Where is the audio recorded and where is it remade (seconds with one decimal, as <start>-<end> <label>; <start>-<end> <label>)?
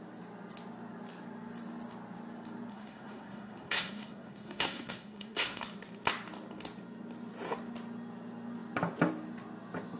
0.0-2.7 recorded; 2.7-5.6 remade; 5.6-10.0 recorded